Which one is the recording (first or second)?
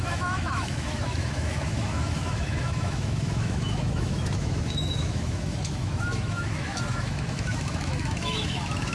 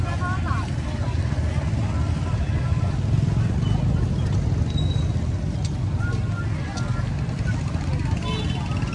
second